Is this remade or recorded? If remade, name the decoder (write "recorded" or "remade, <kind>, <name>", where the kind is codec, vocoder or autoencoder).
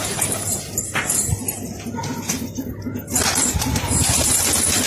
recorded